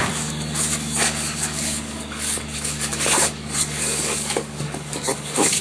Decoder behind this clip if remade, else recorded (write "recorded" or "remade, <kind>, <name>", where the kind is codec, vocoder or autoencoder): remade, codec, DAC